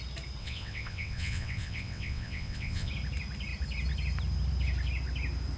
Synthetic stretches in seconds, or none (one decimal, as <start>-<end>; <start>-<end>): 0.4-2.9